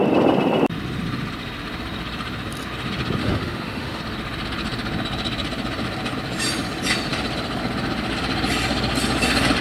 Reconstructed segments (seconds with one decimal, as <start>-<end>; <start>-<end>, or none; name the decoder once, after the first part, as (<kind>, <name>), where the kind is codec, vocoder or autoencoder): 3.2-4.0 (autoencoder, DAC-VAE)